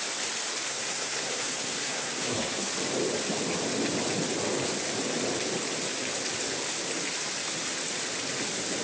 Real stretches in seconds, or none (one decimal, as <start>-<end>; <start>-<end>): 0.0-0.7; 2.7-8.8